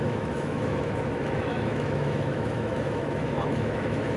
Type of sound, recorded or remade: remade